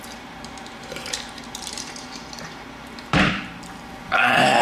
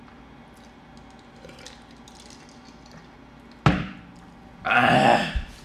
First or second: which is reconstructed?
first